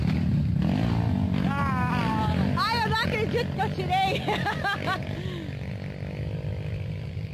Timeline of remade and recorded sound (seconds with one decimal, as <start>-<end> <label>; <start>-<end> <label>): 0.0-7.3 recorded